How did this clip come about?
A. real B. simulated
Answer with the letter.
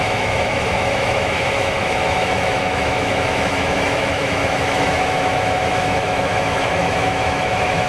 B